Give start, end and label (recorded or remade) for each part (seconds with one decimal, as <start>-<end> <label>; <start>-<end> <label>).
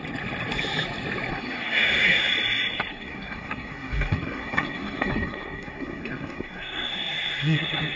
0.0-1.3 recorded; 1.3-2.3 remade; 2.3-2.9 recorded; 2.9-8.0 remade